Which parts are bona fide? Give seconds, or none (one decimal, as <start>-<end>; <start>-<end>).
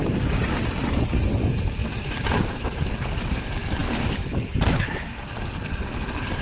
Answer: 0.0-6.4